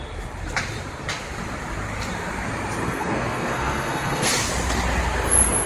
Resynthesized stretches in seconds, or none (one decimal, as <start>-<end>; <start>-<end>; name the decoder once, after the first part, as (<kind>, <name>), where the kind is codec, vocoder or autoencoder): 2.8-4.3 (codec, SNAC)